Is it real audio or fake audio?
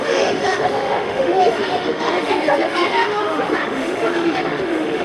fake